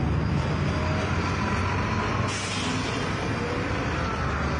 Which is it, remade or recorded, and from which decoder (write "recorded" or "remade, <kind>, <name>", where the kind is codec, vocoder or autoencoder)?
recorded